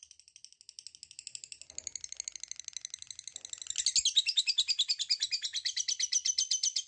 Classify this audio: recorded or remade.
recorded